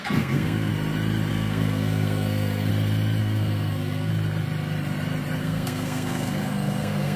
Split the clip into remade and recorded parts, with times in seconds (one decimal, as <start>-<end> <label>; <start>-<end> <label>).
0.0-0.7 remade; 0.7-1.3 recorded; 1.3-2.7 remade; 2.7-3.2 recorded; 3.2-4.1 remade; 4.1-5.4 recorded; 5.4-7.2 remade